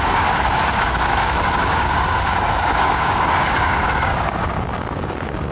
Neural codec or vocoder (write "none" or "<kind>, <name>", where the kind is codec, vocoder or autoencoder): codec, DAC